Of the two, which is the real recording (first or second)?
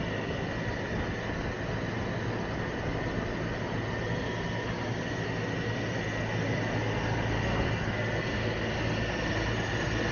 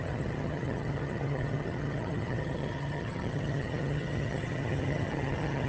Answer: first